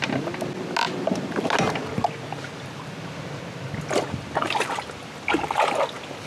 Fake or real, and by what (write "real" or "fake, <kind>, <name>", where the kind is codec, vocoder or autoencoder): real